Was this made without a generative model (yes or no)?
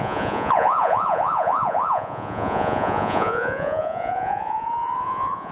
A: no